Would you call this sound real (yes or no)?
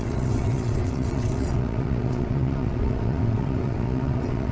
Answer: no